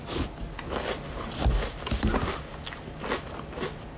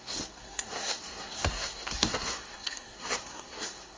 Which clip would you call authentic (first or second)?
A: first